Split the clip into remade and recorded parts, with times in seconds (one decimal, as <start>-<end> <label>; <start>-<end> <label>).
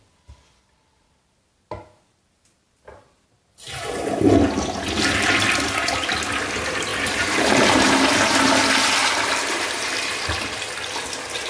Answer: 0.0-6.9 recorded; 6.9-7.8 remade; 7.8-9.0 recorded; 9.0-9.9 remade; 9.9-11.5 recorded